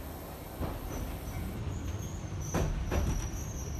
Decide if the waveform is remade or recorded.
remade